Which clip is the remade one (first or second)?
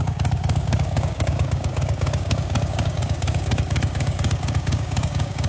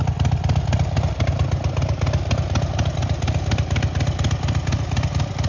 first